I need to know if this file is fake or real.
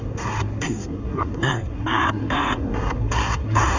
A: fake